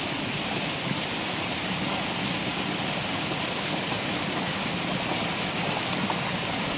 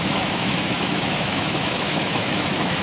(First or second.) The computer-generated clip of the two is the second